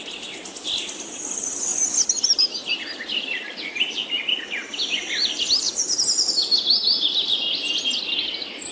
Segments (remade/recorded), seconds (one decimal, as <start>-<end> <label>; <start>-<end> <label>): 0.0-8.7 recorded